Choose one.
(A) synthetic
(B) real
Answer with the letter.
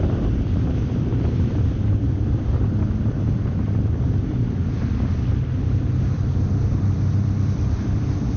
A